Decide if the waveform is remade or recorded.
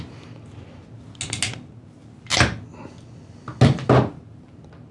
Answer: recorded